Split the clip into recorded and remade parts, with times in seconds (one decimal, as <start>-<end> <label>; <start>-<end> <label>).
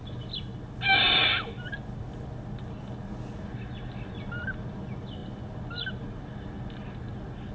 0.0-7.5 recorded